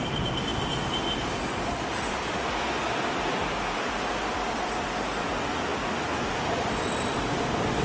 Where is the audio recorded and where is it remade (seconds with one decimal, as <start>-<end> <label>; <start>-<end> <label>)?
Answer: 0.0-7.8 recorded